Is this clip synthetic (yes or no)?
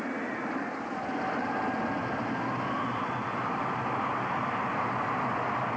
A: no